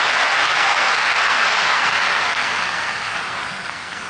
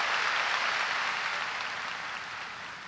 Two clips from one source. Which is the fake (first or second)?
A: first